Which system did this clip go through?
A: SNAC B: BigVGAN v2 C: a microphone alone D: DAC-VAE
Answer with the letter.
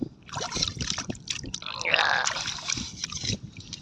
C